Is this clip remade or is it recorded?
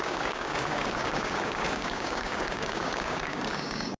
remade